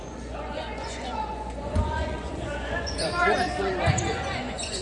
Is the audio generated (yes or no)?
yes